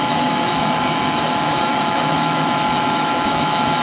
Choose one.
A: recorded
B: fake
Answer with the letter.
B